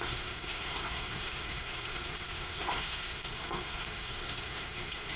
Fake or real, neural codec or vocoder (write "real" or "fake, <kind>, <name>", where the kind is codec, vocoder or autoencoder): fake, codec, SNAC